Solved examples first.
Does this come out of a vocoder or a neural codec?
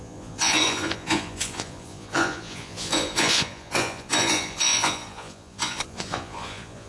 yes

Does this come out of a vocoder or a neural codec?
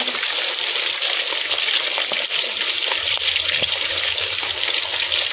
no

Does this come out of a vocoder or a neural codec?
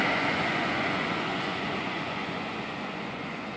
yes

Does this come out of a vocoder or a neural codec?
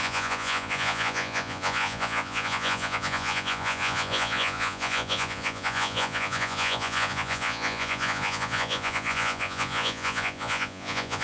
yes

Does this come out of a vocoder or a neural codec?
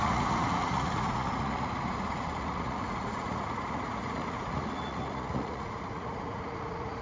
yes